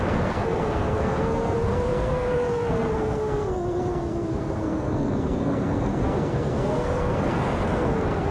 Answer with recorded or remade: remade